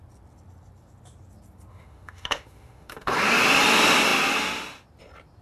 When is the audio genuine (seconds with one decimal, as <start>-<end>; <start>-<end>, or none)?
0.0-1.7; 3.1-5.4